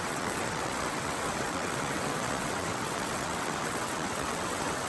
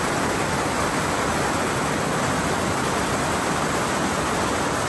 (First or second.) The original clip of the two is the second